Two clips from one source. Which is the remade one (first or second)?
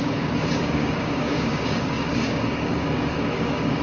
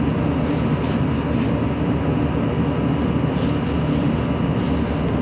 first